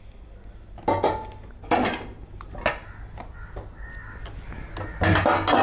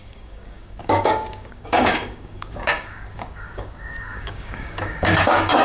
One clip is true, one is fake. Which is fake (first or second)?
second